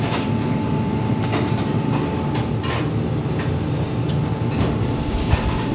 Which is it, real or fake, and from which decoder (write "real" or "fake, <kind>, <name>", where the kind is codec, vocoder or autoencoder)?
real